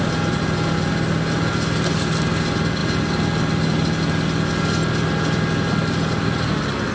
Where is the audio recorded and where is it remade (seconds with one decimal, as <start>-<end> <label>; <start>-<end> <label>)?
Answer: 0.0-6.9 recorded